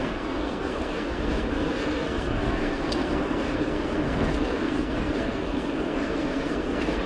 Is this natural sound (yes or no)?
no